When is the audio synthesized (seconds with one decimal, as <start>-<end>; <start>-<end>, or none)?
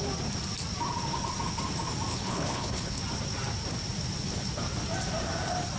2.1-3.0